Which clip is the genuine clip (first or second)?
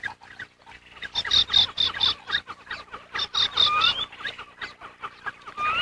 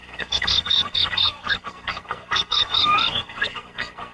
first